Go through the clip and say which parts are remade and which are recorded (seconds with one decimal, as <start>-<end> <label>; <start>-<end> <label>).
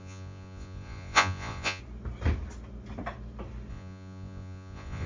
0.0-1.8 remade; 1.8-3.7 recorded; 3.7-5.1 remade